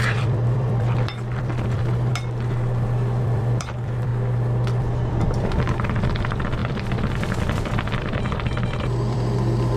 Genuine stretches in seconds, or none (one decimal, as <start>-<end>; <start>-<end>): 2.1-3.2; 4.1-5.1